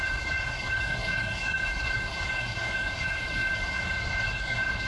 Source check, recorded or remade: remade